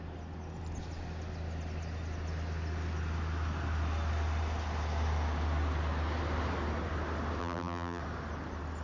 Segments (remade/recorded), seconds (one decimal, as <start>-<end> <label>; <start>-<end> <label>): 0.0-7.4 recorded; 7.4-8.0 remade; 8.0-8.8 recorded